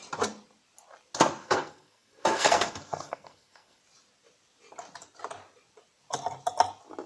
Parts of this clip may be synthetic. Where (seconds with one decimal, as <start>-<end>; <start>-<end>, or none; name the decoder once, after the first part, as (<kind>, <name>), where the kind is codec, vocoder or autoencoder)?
1.4-3.8 (codec, SNAC)